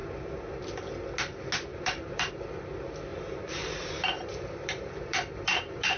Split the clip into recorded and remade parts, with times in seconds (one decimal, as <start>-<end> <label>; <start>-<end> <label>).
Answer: 0.0-1.7 recorded; 1.7-2.3 remade; 2.3-3.1 recorded; 3.1-6.0 remade